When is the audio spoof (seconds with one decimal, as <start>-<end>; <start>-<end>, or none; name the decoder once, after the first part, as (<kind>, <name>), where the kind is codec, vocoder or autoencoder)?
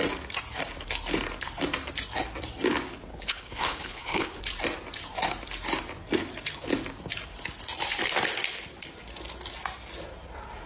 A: 3.1-4.4 (codec, HILCodec)